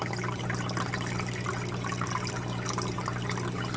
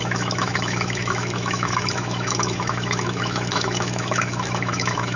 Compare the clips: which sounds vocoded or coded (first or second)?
second